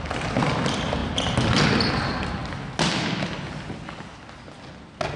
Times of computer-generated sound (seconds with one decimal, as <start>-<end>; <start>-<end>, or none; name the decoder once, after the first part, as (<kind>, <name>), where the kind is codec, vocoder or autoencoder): none